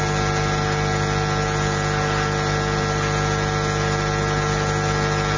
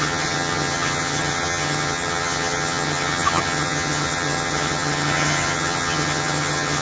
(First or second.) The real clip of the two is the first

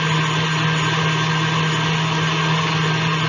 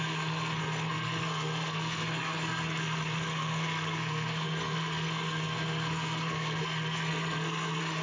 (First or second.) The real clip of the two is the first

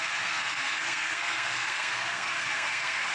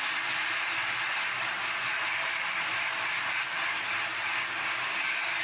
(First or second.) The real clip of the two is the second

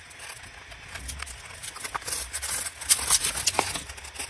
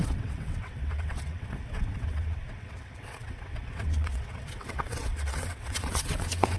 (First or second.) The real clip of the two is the first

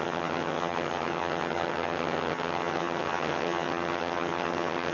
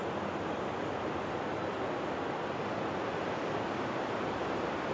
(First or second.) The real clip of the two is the second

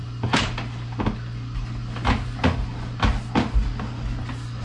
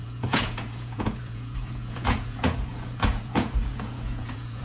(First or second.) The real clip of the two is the first